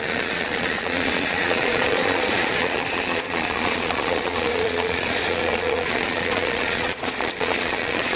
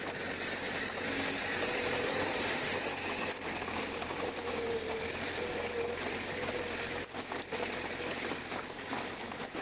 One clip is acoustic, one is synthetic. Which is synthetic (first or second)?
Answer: first